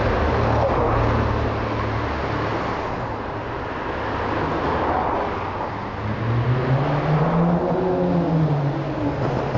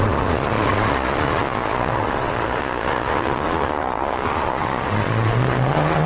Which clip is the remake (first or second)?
second